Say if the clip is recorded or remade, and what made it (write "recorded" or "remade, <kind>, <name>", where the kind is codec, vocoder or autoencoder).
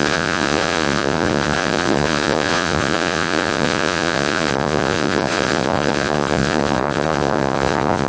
remade, vocoder, Vocos